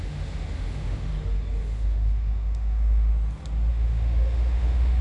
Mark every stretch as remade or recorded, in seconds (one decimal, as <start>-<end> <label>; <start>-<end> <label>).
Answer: 0.0-1.1 remade; 1.1-1.6 recorded; 1.6-3.1 remade; 3.1-3.7 recorded; 3.7-5.0 remade